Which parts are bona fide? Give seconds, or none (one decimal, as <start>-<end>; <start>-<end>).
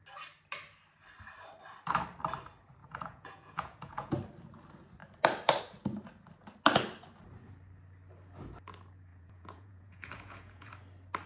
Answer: 0.0-2.8; 4.1-9.1; 10.7-11.3